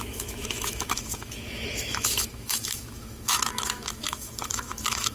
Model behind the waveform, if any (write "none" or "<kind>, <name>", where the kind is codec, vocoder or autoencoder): autoencoder, DAC-VAE